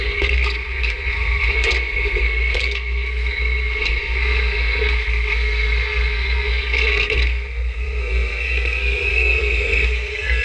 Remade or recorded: remade